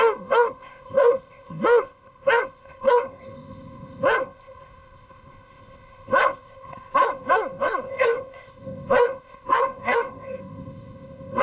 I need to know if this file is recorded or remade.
remade